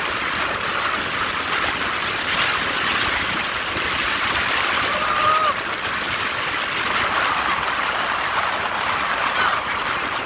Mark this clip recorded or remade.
recorded